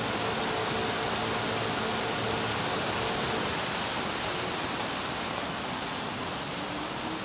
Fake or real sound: real